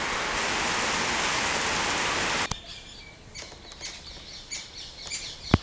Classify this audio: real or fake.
real